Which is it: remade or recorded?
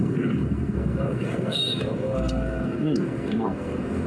remade